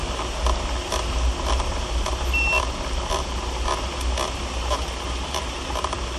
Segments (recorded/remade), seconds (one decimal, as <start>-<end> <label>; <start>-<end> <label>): 0.0-6.2 recorded